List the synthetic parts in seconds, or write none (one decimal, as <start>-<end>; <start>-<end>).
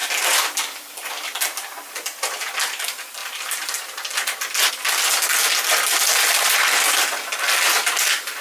0.0-8.4